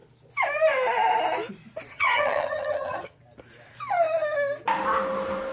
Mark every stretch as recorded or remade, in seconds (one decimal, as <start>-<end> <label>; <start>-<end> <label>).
0.0-1.9 recorded; 1.9-3.2 remade; 3.2-5.5 recorded

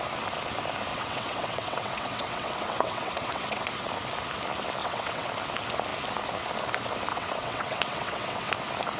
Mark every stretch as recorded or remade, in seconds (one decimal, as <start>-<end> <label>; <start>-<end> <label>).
0.0-0.9 recorded; 0.9-3.9 remade; 3.9-4.8 recorded; 4.8-5.3 remade; 5.3-7.1 recorded; 7.1-8.5 remade; 8.5-9.0 recorded

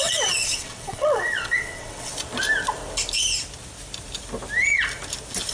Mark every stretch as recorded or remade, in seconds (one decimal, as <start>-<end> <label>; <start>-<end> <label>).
0.0-2.1 remade; 2.1-5.5 recorded

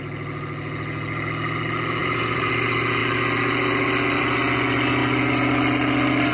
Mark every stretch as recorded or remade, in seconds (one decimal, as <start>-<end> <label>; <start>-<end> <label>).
0.0-2.0 recorded; 2.0-2.5 remade; 2.5-6.3 recorded